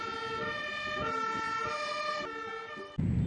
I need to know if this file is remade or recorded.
recorded